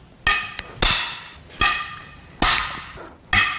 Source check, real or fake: real